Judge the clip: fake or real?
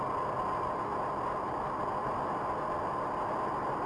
real